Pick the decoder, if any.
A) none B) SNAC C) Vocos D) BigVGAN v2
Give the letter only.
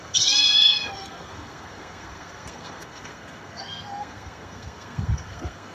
B